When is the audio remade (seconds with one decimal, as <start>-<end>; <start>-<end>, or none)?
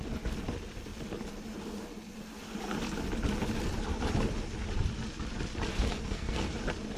5.7-6.5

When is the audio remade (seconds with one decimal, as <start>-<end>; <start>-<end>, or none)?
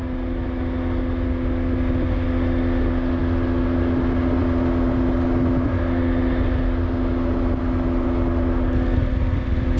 none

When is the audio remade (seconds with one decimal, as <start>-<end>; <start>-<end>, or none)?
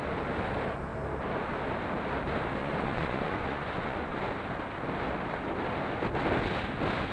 2.6-4.2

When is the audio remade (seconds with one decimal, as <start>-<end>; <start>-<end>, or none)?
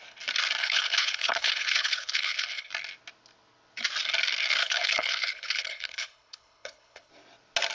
0.6-2.7; 4.6-7.1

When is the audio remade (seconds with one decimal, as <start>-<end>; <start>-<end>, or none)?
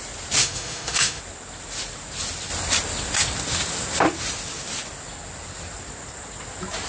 0.4-1.2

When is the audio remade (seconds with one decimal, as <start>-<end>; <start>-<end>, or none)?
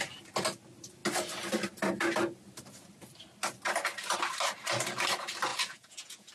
5.5-6.3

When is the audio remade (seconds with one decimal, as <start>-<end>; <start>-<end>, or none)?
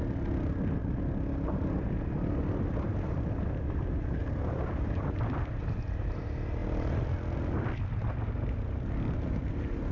none